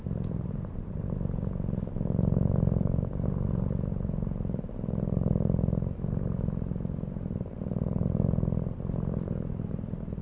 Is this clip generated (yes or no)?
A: yes